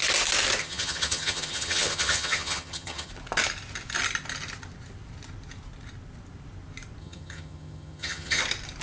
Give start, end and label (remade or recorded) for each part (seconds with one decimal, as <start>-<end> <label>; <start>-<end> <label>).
0.0-0.6 recorded; 0.6-3.1 remade; 3.1-7.0 recorded; 7.0-8.4 remade; 8.4-8.8 recorded